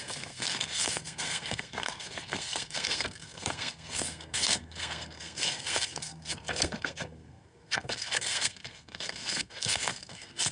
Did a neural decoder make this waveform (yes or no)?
yes